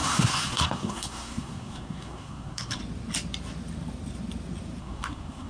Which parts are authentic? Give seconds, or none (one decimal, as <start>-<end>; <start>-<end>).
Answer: 2.8-4.8